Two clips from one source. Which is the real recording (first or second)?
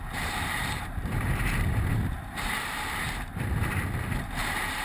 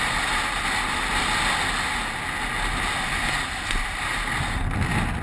second